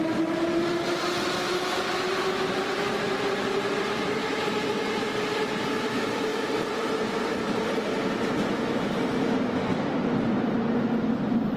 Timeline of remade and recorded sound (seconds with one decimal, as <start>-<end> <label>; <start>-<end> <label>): 0.0-11.6 recorded